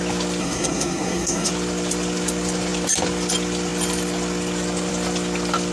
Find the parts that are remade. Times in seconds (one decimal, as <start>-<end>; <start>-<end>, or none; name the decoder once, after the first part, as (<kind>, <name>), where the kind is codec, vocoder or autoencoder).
0.4-1.5 (codec, SNAC)